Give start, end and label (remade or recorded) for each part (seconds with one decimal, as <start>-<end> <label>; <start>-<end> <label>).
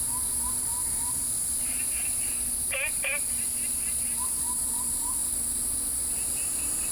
0.0-6.9 recorded